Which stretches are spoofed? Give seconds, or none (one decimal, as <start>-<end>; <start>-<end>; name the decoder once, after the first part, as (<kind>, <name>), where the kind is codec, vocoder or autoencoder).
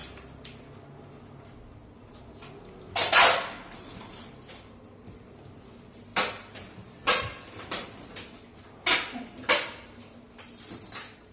none